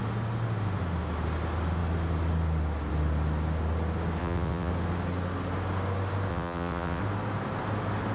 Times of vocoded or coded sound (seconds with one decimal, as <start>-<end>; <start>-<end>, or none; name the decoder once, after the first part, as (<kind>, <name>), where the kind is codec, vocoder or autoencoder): 4.2-4.7 (vocoder, WaveNeXt); 6.3-7.0